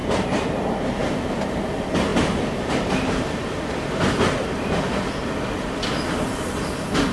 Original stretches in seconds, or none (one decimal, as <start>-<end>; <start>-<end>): 1.0-2.1; 6.1-7.1